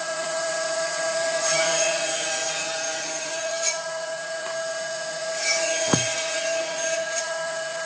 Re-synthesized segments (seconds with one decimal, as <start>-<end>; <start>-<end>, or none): 0.0-7.9